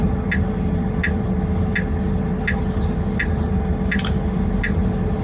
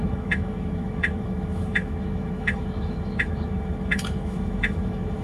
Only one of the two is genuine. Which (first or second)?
first